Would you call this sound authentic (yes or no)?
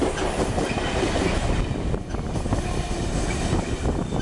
yes